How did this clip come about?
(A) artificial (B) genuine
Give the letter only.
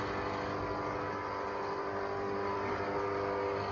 B